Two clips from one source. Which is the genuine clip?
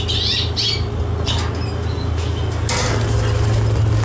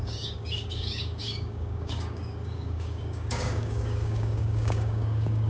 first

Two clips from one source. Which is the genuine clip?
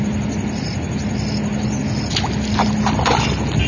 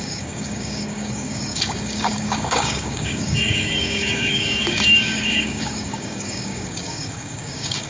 first